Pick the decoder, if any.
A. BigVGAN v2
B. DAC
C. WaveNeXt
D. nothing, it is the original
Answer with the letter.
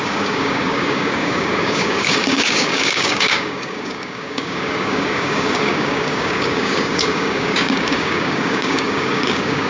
B